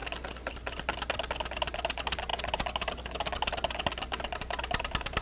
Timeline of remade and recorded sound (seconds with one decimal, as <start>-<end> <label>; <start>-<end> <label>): 0.0-5.2 recorded